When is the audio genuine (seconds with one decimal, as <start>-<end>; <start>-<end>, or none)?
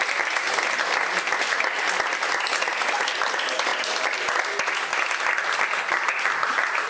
0.0-6.9